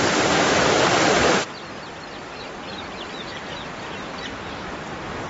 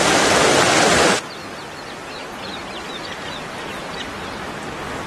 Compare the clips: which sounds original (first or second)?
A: second